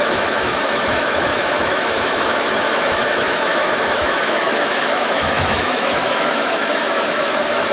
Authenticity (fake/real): fake